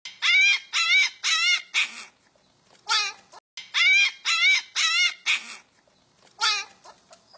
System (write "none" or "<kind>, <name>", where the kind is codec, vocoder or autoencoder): none